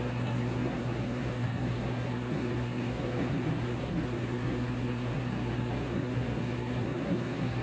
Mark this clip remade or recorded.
remade